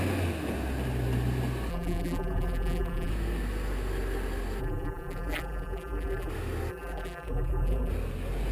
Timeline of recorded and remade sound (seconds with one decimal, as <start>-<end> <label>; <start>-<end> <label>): 0.0-1.7 recorded; 1.7-3.1 remade; 3.1-4.6 recorded; 4.6-6.3 remade; 6.3-6.7 recorded; 6.7-7.9 remade; 7.9-8.5 recorded